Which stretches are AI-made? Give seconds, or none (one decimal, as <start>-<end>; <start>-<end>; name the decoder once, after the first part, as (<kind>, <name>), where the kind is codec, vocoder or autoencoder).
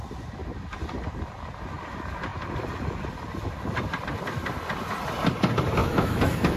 5.8-6.6 (autoencoder, DAC-VAE)